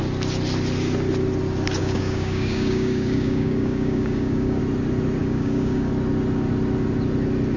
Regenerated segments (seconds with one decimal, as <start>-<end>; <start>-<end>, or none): 1.8-4.6; 5.2-5.9